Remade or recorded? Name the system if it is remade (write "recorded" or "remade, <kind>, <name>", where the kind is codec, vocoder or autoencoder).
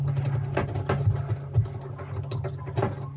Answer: recorded